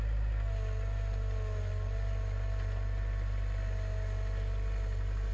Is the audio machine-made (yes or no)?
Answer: no